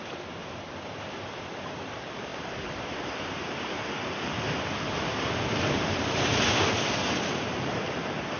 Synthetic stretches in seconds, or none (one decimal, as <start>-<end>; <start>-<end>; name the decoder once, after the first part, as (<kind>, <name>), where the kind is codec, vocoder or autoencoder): 0.0-8.4 (vocoder, BigVGAN v2)